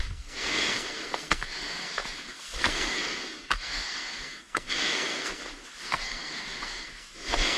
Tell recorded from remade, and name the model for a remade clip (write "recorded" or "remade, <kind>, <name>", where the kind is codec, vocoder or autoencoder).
remade, codec, SNAC